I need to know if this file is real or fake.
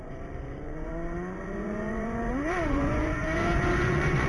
fake